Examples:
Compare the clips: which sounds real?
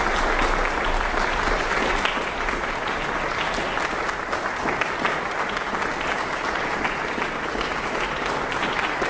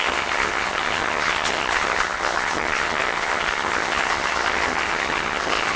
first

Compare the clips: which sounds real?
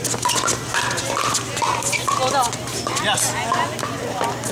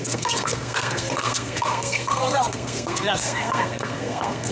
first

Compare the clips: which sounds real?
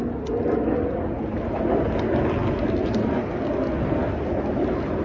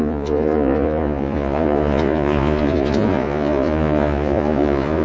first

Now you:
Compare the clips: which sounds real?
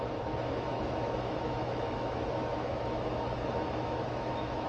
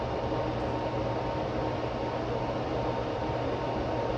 second